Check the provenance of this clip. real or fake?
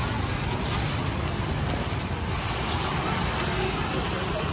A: real